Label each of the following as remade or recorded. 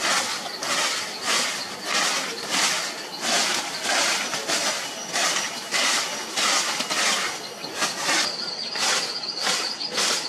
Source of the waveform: recorded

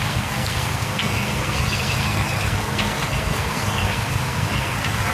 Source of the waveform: remade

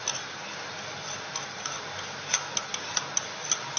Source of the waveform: recorded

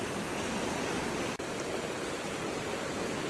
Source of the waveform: recorded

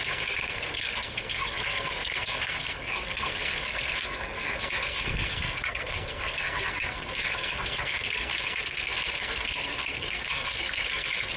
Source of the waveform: remade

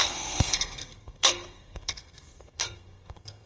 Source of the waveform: remade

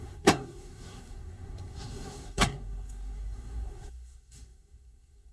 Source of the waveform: remade